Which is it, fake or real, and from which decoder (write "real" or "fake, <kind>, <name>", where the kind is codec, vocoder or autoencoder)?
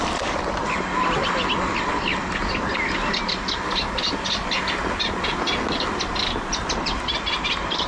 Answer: real